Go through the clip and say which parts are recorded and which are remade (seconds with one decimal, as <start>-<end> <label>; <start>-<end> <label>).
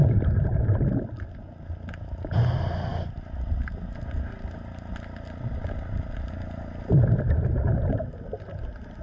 0.0-9.0 recorded